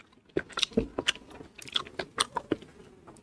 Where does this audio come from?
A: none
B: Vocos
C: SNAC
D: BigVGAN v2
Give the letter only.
A